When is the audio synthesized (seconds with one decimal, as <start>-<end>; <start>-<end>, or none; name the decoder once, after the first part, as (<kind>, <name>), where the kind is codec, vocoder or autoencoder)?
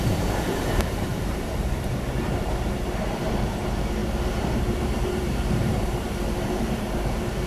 0.0-7.5 (vocoder, BigVGAN v2)